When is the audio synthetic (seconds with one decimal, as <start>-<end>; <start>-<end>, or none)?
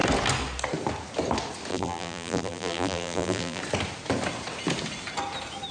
1.7-3.6